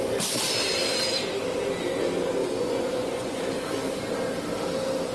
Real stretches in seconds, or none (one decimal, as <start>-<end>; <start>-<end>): 0.0-2.4; 3.4-5.1